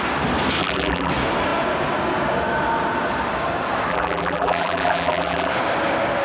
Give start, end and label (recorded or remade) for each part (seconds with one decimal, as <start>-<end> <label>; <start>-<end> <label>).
0.0-0.6 recorded; 0.6-1.1 remade; 1.1-3.9 recorded; 3.9-5.5 remade; 5.5-6.2 recorded